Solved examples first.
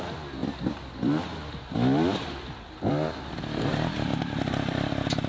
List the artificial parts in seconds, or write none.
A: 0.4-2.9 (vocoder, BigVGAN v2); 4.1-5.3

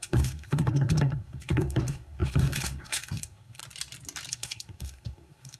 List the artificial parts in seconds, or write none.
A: 0.0-3.6 (codec, SNAC); 4.3-5.6

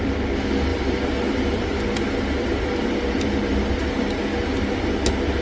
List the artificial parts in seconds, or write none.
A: 0.7-3.9 (vocoder, BigVGAN v2)